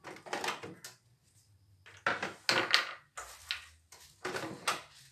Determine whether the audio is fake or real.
real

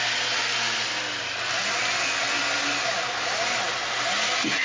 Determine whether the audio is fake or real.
real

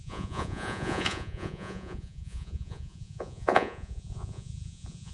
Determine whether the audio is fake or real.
fake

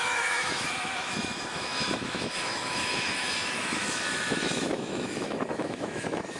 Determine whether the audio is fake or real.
fake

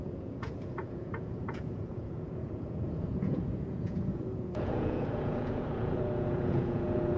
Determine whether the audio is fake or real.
fake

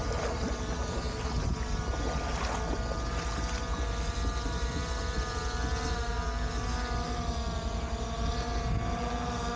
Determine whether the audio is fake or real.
real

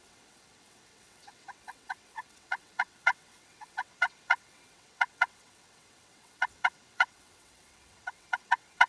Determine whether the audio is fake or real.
fake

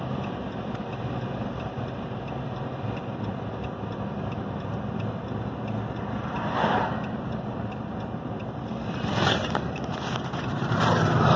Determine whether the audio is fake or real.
fake